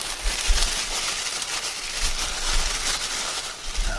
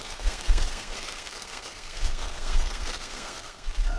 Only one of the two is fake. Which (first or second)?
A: second